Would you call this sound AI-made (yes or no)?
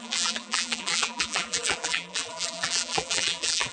yes